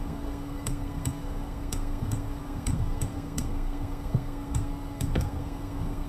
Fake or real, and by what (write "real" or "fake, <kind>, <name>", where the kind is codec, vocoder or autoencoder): fake, codec, SNAC